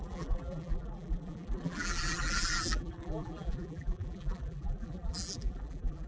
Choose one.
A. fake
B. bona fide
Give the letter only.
A